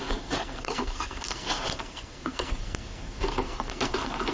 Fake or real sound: fake